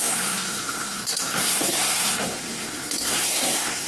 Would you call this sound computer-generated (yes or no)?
yes